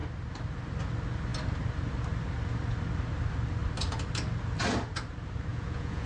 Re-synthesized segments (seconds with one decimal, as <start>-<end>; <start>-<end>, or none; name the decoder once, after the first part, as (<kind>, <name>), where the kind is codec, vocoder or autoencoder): 5.5-6.1 (vocoder, Vocos)